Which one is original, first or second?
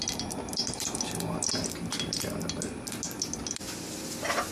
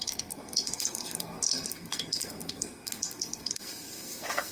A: first